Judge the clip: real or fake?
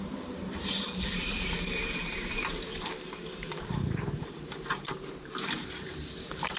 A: fake